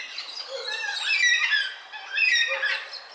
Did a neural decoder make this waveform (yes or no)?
no